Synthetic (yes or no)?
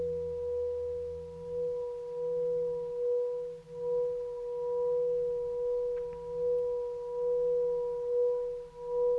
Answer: no